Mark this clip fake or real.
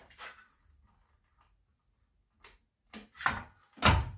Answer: real